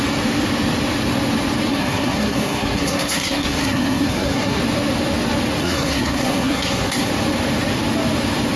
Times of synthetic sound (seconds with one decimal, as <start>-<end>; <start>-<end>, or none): 1.7-4.6; 5.6-7.1